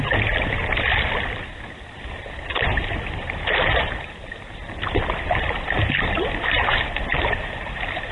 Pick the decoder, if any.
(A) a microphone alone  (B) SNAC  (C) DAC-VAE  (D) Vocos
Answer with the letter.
A